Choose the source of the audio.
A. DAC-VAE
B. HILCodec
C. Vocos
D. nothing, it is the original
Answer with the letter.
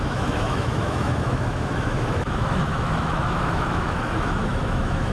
A